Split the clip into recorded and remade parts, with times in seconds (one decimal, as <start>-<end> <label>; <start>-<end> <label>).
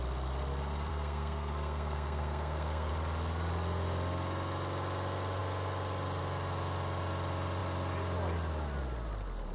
0.0-0.9 recorded; 0.9-2.9 remade; 2.9-9.5 recorded